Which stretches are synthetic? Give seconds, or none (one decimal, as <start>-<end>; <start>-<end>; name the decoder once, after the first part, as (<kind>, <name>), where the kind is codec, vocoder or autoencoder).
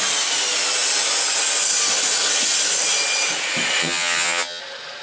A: 3.8-4.6 (vocoder, HiFi-GAN)